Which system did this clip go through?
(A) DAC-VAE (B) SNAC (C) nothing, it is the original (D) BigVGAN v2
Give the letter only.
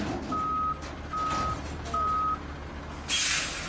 C